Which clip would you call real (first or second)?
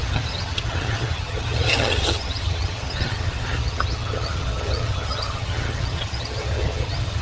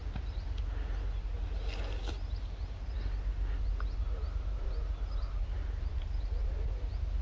second